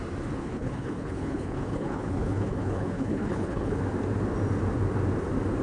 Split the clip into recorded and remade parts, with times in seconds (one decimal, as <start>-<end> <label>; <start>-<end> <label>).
0.0-0.4 recorded; 0.4-3.8 remade; 3.8-5.6 recorded